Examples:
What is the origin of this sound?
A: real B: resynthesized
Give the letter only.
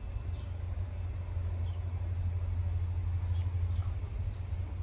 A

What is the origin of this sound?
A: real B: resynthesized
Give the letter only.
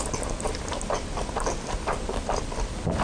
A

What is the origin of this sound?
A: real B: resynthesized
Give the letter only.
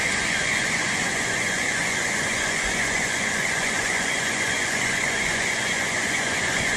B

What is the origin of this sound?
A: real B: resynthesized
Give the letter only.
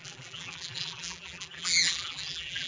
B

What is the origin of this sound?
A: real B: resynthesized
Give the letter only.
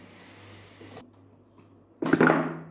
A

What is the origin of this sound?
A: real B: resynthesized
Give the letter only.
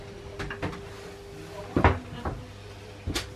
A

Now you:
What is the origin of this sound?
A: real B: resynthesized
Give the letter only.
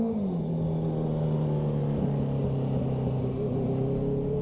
A